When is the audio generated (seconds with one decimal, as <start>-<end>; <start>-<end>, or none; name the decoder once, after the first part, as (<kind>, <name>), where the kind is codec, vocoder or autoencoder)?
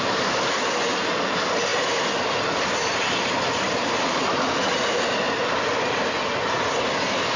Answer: none